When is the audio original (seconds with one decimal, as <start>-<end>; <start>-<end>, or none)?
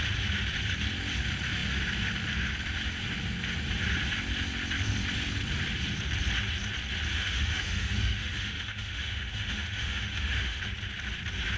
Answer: 0.0-7.1; 10.6-11.6